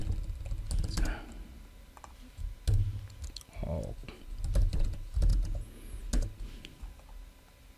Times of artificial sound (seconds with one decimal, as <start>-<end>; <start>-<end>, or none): 5.3-5.9